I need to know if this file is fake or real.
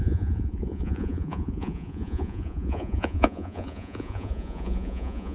fake